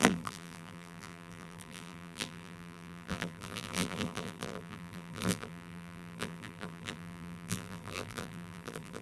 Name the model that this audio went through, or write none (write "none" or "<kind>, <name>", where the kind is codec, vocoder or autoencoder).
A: vocoder, BigVGAN v2